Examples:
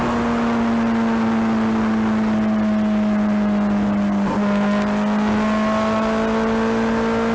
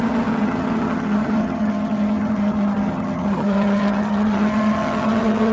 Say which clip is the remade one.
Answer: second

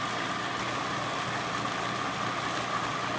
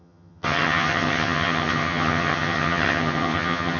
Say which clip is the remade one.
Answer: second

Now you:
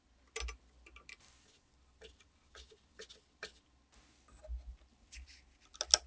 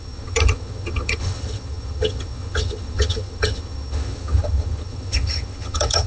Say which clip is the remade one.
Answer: second